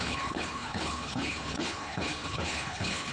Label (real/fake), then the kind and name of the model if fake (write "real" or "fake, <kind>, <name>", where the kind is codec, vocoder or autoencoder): fake, codec, HILCodec